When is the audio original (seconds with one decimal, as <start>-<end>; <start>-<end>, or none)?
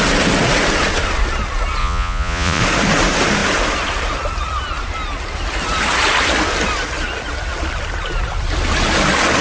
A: 0.0-1.8; 2.6-9.4